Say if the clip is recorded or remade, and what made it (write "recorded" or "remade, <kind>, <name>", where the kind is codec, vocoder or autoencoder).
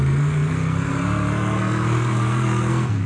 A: remade, codec, SNAC